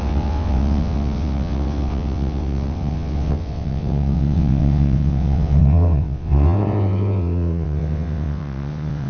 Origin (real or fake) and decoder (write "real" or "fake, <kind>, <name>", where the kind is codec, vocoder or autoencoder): fake, vocoder, WaveNeXt